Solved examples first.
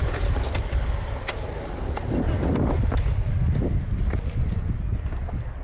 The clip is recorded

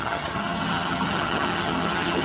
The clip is remade